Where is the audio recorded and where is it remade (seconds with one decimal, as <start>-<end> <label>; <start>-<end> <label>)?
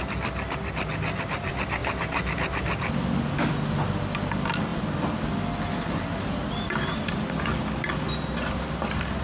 0.0-1.8 recorded; 1.8-3.9 remade; 3.9-4.7 recorded; 4.7-5.5 remade; 5.5-9.2 recorded